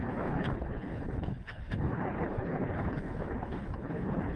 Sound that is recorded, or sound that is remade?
remade